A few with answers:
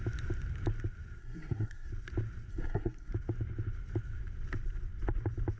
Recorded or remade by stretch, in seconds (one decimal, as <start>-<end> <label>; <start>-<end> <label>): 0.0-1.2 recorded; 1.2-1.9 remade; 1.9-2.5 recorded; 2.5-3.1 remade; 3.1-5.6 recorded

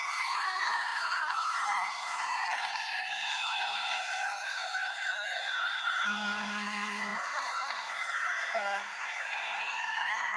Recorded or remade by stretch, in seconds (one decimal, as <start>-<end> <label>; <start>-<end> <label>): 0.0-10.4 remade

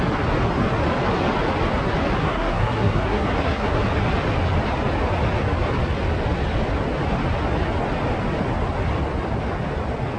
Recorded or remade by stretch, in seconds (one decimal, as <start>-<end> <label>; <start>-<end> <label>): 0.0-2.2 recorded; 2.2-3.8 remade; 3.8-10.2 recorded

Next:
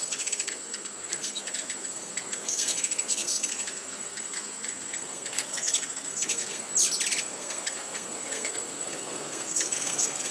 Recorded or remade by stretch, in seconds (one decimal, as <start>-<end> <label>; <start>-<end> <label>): 0.0-6.7 remade; 6.7-7.2 recorded; 7.2-10.3 remade

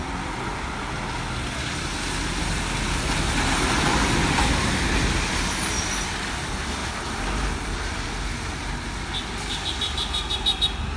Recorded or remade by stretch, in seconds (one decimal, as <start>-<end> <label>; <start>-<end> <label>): 0.0-11.0 recorded